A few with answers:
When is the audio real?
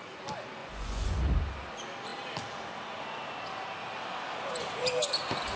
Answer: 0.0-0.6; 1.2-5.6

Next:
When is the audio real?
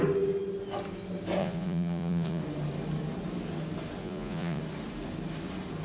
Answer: 0.0-1.4; 2.4-4.0; 4.6-5.8